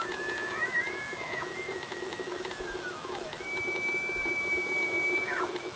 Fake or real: fake